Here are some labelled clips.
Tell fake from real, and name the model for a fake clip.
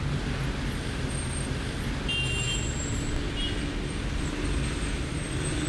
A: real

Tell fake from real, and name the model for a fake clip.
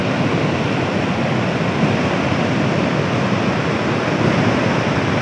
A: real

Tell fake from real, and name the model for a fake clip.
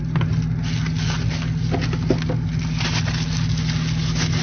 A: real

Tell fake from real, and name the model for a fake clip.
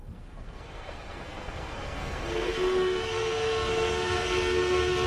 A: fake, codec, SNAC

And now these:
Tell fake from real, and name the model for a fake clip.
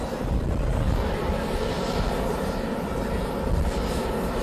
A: real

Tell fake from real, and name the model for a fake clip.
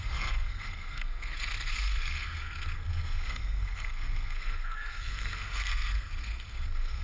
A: fake, codec, SNAC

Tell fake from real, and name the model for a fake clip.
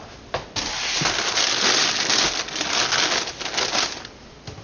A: real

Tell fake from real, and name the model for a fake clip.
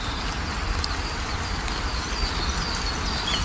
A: real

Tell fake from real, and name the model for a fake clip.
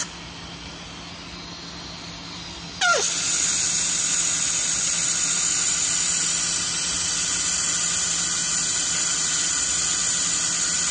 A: real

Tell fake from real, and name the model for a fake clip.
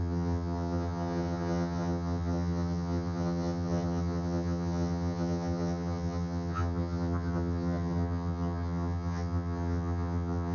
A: fake, vocoder, HiFi-GAN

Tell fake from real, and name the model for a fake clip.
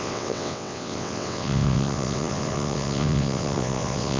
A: fake, vocoder, WaveNeXt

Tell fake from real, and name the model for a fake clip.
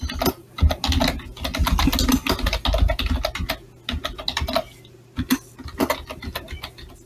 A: real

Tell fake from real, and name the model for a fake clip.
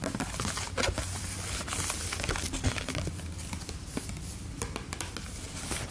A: real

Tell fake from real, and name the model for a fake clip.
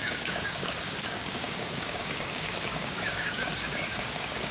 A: fake, codec, DAC